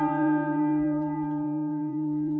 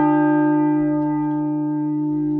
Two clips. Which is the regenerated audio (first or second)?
first